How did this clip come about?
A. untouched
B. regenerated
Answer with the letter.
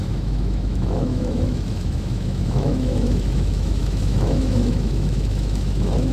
B